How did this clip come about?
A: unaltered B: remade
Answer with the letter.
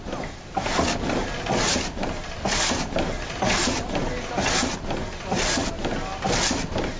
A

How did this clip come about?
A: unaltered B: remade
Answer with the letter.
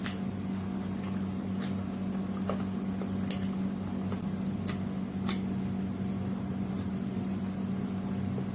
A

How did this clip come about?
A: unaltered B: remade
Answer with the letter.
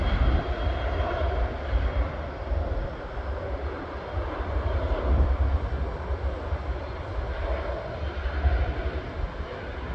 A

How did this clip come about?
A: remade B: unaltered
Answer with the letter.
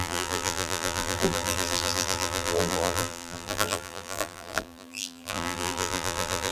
A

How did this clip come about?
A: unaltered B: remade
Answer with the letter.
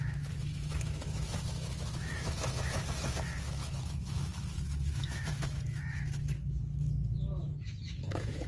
B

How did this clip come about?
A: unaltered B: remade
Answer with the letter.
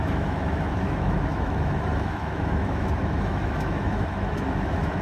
B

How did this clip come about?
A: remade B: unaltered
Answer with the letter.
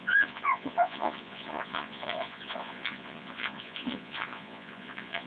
A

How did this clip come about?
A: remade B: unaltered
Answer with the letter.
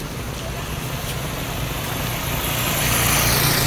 B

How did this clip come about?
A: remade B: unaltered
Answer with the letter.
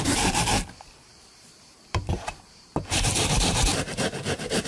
A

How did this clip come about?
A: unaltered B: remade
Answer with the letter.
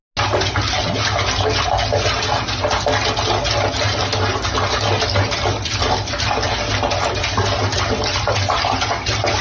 A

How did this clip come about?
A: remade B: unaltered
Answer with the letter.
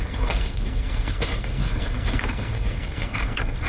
A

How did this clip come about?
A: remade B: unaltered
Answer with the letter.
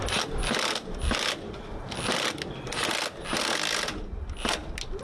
B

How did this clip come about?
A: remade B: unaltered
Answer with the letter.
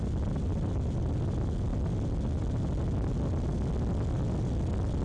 B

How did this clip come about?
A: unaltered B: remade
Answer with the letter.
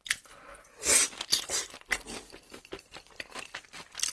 A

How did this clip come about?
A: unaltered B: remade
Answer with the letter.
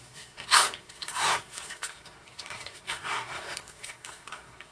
B